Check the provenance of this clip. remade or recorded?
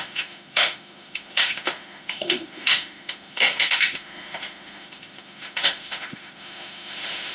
remade